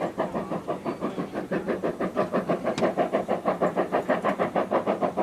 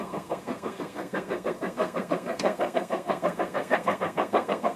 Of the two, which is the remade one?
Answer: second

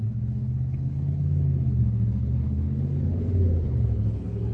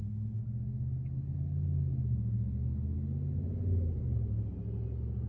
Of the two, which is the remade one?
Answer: first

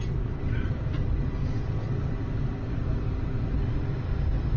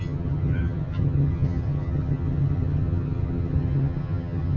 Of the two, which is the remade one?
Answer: second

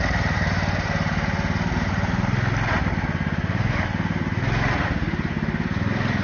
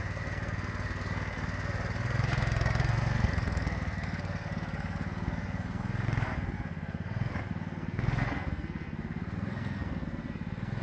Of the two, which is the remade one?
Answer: second